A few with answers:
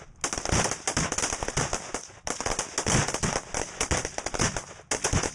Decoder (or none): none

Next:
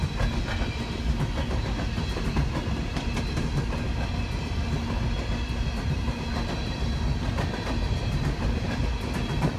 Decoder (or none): none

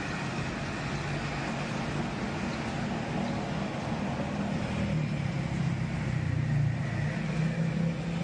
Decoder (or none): none